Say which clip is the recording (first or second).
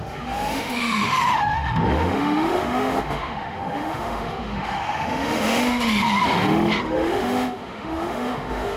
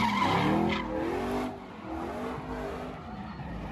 second